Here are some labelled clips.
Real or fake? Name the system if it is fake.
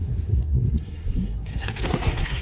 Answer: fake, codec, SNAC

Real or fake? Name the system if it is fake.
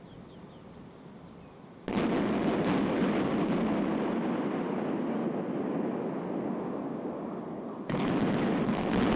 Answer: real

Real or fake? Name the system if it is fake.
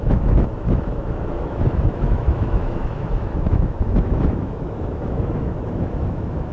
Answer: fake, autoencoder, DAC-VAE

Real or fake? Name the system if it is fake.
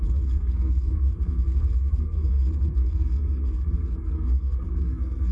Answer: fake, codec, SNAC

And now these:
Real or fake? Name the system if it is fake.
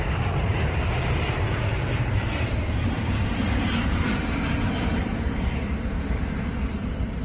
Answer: fake, vocoder, BigVGAN v2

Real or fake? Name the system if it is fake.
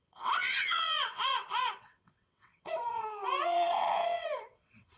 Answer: fake, vocoder, WaveNeXt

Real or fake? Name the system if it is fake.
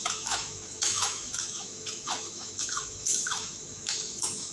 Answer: fake, autoencoder, DAC-VAE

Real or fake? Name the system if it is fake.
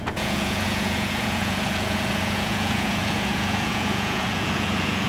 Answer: fake, vocoder, Vocos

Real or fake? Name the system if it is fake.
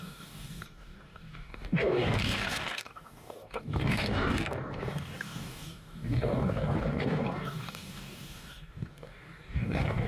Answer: fake, codec, DAC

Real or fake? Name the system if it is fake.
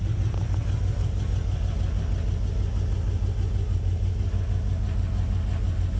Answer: real